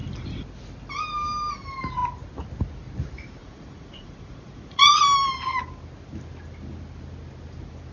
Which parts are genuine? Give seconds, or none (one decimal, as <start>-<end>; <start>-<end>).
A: 0.0-3.4; 5.0-7.9